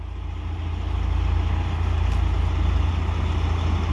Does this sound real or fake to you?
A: real